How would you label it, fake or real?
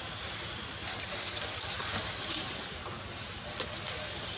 real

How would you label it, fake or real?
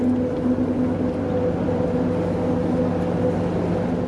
real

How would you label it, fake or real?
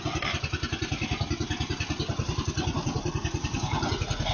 real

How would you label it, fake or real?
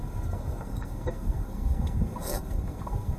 fake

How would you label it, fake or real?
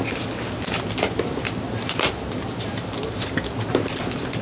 real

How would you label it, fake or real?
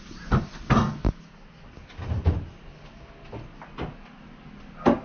real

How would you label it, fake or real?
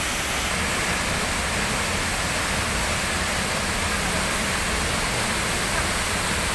real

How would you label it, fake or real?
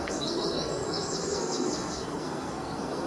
fake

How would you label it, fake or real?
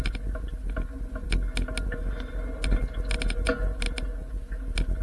real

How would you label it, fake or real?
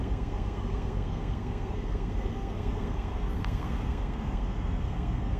fake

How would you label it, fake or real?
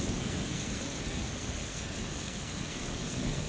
fake